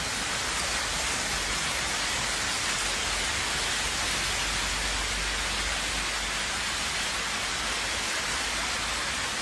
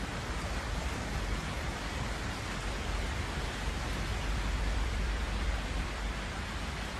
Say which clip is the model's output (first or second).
second